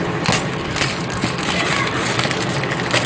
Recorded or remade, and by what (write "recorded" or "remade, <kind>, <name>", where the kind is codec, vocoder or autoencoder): recorded